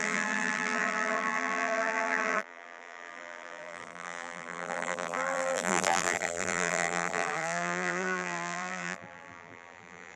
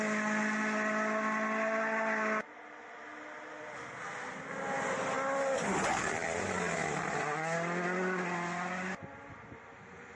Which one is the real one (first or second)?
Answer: second